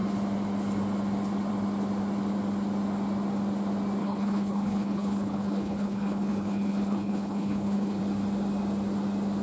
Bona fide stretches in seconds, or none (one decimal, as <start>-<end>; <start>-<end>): 0.0-4.0; 8.0-9.4